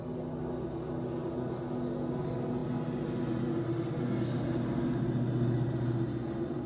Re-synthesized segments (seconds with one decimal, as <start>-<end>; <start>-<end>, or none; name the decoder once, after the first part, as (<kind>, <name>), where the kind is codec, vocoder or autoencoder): none